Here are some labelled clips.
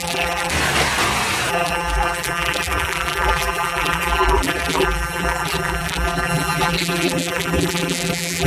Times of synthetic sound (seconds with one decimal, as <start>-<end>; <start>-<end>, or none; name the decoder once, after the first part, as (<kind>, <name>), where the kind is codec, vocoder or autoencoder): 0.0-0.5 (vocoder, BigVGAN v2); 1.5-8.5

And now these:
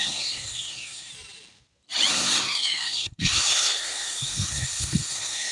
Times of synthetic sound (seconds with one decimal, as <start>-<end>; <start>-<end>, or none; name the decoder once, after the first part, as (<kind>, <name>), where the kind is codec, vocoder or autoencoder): 0.0-1.1 (codec, SNAC); 2.1-5.5

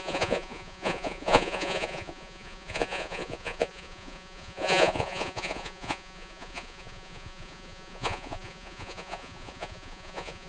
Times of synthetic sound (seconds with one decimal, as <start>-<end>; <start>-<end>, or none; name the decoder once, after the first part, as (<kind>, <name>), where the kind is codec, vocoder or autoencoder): 0.0-10.5 (vocoder, Vocos)

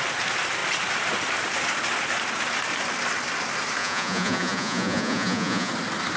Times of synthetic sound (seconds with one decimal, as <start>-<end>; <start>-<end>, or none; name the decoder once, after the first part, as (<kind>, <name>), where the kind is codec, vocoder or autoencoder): 3.8-5.7 (vocoder, Vocos)

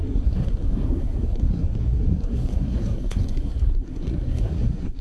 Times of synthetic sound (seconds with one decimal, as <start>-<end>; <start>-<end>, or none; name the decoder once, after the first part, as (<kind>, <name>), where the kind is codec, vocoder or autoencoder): 0.0-5.0 (codec, SNAC)

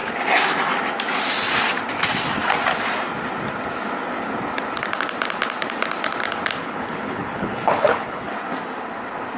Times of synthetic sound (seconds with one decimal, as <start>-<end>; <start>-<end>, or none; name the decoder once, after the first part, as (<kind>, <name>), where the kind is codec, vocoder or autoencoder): 6.6-8.3 (codec, HILCodec)